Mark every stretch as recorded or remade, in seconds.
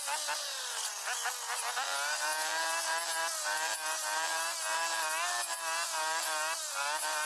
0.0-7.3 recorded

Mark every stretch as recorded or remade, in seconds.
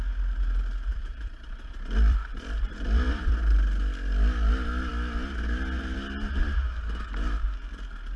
0.0-0.9 recorded; 0.9-3.3 remade; 3.3-8.2 recorded